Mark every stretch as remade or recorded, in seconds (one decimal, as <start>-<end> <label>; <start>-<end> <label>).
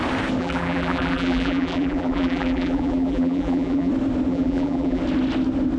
0.0-0.4 recorded; 0.4-3.9 remade; 3.9-4.3 recorded; 4.3-5.0 remade; 5.0-5.8 recorded